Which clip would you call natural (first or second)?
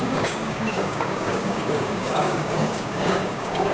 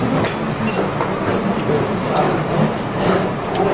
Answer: second